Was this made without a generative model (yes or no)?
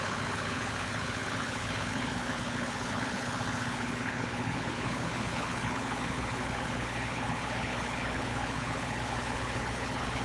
no